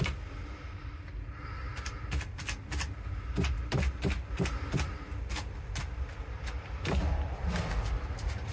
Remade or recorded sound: recorded